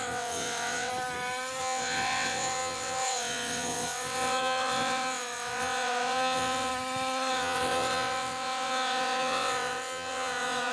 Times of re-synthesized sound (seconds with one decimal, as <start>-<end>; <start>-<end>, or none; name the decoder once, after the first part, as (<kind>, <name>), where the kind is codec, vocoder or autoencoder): 0.0-0.9 (vocoder, WaveNeXt); 1.6-6.7; 7.3-10.7